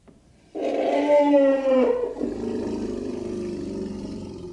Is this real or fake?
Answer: fake